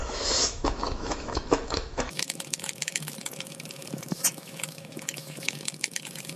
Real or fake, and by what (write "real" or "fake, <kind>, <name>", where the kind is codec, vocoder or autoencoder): fake, autoencoder, DAC-VAE